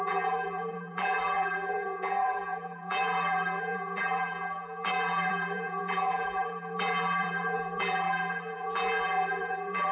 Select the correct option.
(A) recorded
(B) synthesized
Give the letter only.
B